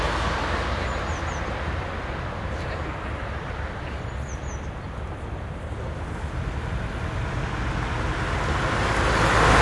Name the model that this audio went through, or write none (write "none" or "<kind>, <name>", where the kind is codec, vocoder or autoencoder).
none